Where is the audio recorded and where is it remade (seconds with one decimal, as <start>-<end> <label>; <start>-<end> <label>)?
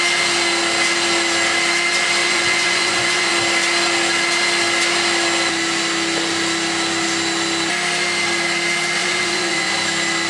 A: 0.0-2.2 recorded; 2.2-3.3 remade; 3.3-9.0 recorded; 9.0-9.7 remade; 9.7-10.3 recorded